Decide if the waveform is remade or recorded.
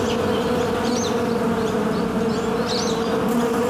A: recorded